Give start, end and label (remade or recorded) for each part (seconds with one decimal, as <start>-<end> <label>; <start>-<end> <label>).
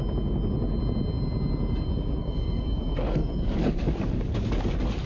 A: 0.0-2.2 recorded; 2.2-4.3 remade; 4.3-5.1 recorded